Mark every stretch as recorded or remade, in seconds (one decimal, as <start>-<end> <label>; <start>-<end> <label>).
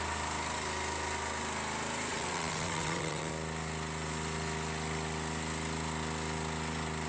0.0-2.1 recorded; 2.1-3.3 remade; 3.3-7.1 recorded